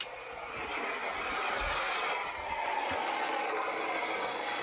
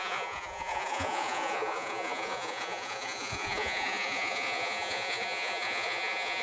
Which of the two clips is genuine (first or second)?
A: first